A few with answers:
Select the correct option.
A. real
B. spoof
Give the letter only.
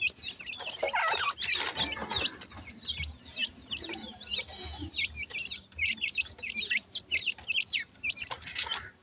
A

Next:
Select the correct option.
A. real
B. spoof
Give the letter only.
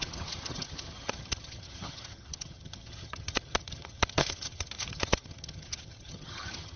B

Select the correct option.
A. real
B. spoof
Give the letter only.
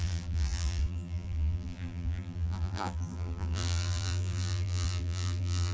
B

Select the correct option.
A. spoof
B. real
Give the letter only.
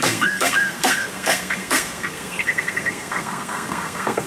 A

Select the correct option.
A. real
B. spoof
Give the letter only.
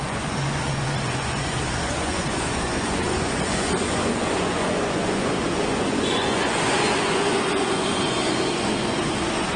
B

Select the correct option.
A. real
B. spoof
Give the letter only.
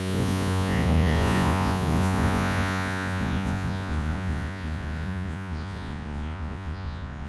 B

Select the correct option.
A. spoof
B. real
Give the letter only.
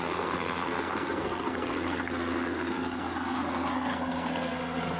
A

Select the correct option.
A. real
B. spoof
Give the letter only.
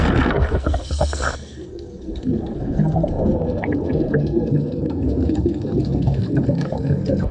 B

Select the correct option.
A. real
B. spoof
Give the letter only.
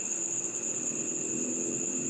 A